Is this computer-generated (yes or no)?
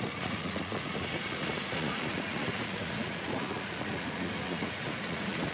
yes